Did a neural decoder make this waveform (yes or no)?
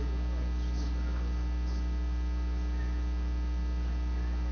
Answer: no